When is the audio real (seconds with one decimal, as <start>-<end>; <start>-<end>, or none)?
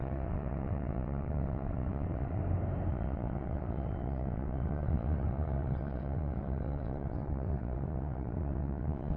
2.4-2.9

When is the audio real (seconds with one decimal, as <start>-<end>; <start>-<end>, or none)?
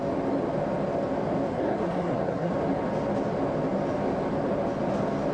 0.0-1.5; 2.5-5.3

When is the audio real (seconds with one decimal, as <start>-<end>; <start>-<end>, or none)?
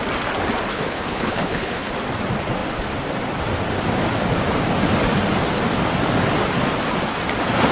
0.0-0.7; 1.9-7.7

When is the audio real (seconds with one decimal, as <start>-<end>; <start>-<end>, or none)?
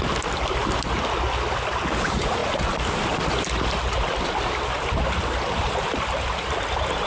0.0-7.1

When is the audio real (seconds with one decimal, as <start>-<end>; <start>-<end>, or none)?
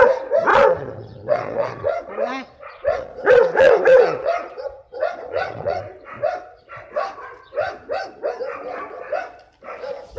0.0-0.5; 5.8-10.2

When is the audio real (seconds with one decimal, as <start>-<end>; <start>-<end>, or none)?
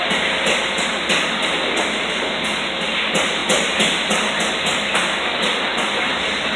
0.0-6.6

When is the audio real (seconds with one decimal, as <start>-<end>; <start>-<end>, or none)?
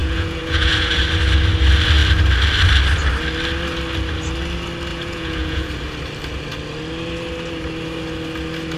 1.0-4.9; 5.7-8.8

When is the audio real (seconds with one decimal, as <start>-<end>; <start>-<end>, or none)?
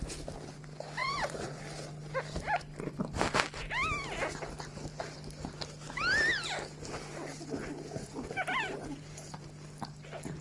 0.0-1.0; 1.6-10.4